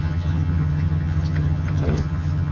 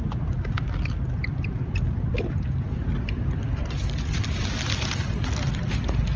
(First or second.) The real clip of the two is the second